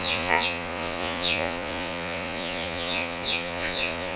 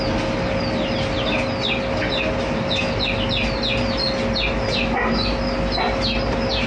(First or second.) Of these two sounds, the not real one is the first